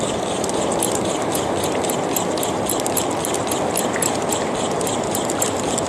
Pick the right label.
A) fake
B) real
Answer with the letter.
B